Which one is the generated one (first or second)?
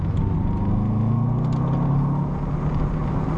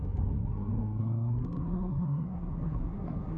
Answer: second